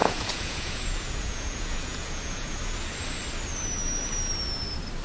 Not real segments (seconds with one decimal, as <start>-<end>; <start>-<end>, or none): 0.0-3.0